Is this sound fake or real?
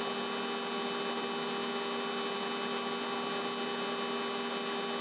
real